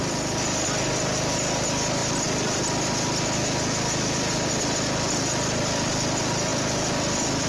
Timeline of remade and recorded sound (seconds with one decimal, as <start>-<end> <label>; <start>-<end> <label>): 0.0-7.5 recorded